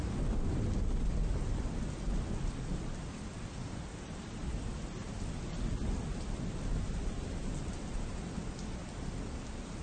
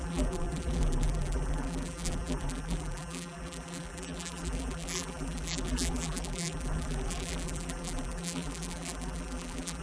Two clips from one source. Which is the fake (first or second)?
second